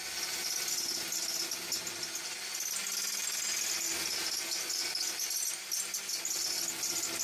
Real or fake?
real